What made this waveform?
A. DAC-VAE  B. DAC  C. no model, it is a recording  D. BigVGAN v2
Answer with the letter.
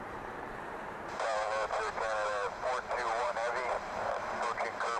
D